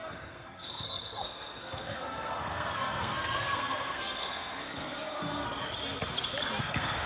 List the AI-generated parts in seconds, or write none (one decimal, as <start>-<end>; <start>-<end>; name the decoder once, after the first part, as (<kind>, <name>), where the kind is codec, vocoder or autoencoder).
0.0-5.6 (codec, SNAC); 6.6-7.1